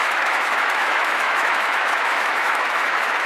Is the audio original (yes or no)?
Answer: no